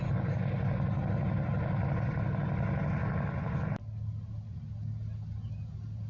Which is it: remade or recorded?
recorded